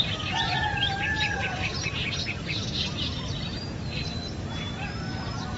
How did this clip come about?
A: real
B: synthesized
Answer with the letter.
A